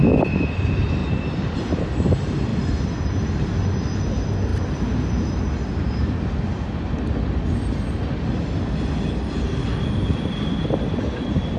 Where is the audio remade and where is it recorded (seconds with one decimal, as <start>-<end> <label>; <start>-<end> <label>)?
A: 0.0-1.0 recorded; 1.0-1.6 remade; 1.6-2.5 recorded; 2.5-3.5 remade; 3.5-4.5 recorded; 4.5-6.1 remade; 6.1-11.6 recorded